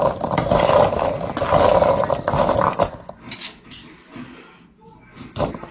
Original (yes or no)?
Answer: yes